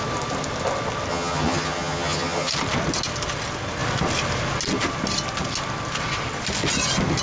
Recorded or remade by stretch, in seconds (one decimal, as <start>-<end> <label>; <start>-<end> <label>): 0.0-1.1 recorded; 1.1-2.5 remade; 2.5-7.2 recorded